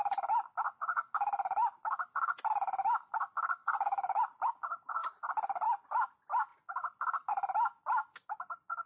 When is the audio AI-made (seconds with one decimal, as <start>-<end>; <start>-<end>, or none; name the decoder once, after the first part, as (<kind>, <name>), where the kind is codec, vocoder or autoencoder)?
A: 3.6-4.2 (codec, DAC)